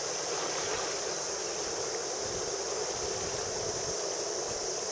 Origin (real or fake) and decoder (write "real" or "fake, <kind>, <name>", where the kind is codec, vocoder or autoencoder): real